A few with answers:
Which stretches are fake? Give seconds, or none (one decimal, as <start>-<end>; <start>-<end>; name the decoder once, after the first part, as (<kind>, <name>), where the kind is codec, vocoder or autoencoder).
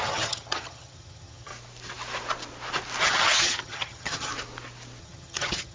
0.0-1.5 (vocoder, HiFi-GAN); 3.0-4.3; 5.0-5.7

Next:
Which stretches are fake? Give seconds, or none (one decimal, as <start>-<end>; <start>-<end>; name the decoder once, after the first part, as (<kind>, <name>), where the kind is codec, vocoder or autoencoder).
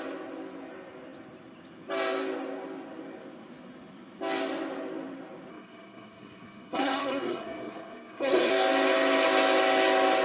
5.5-8.5 (codec, SNAC)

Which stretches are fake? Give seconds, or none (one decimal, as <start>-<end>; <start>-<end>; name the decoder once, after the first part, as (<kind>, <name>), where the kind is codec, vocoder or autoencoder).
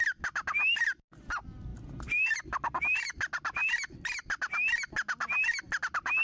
none